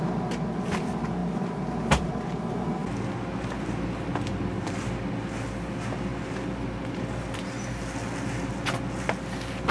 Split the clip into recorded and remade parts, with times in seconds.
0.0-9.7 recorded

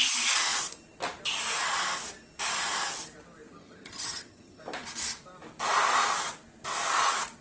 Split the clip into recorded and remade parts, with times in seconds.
0.0-3.5 recorded; 3.5-4.6 remade; 4.6-7.4 recorded

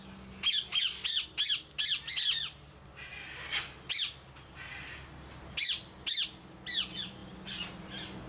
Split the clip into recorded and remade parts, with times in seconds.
0.0-8.3 recorded

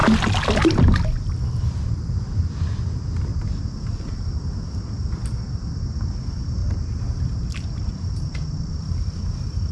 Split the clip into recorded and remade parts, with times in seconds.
0.0-3.3 recorded; 3.3-4.1 remade; 4.1-6.6 recorded; 6.6-9.2 remade; 9.2-9.7 recorded

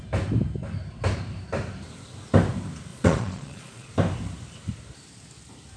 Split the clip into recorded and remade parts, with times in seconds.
0.0-2.9 recorded; 2.9-3.9 remade; 3.9-5.8 recorded

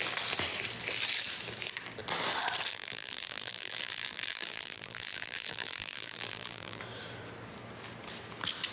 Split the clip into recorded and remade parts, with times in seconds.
0.0-2.7 recorded; 2.7-6.8 remade; 6.8-8.7 recorded

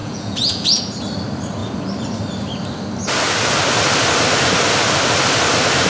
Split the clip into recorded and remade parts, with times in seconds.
0.0-0.8 remade; 0.8-5.9 recorded

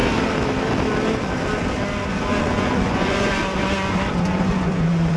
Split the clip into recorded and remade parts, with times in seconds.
0.0-2.1 recorded; 2.1-3.4 remade; 3.4-4.1 recorded; 4.1-5.2 remade